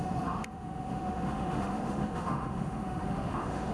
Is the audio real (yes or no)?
no